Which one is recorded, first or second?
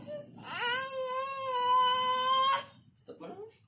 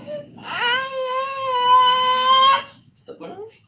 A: first